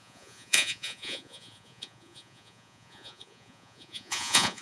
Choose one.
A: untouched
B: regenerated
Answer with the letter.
B